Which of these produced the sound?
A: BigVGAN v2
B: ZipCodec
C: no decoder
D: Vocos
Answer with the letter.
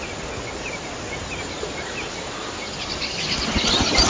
C